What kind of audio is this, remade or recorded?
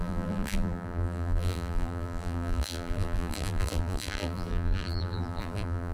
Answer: remade